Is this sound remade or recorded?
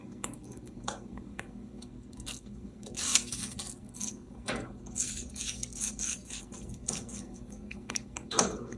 remade